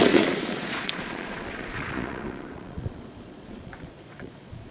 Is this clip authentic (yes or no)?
no